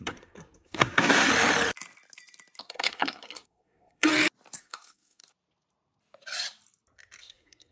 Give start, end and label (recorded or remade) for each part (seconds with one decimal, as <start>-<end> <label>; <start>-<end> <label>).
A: 0.0-1.3 remade; 1.3-2.6 recorded; 2.6-4.1 remade; 4.1-4.6 recorded; 4.6-5.2 remade; 5.2-7.2 recorded; 7.2-7.7 remade